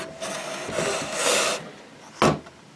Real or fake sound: real